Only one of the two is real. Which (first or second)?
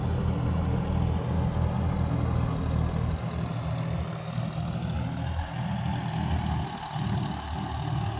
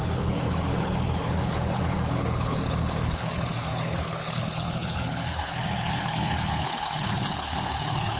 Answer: first